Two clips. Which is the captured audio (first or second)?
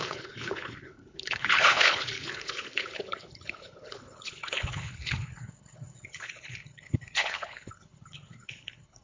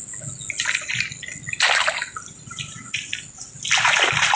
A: second